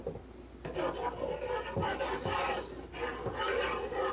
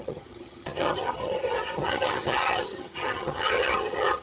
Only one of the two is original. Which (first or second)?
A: first